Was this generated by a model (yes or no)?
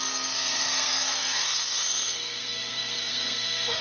yes